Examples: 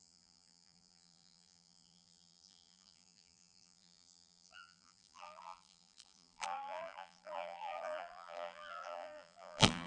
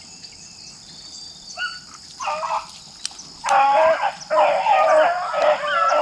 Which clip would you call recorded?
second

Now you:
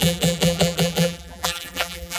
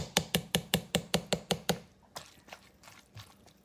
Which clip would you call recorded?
second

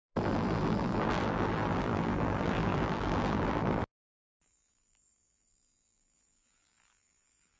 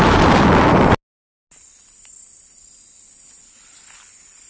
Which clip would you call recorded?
second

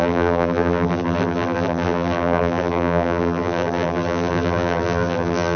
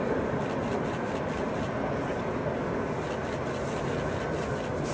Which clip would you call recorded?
second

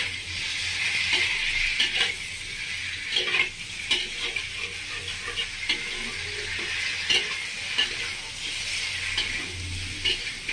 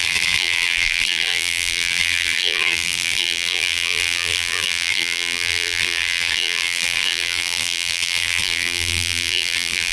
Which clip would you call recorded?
first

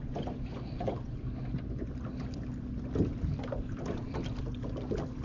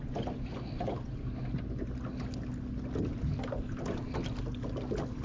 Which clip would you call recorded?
second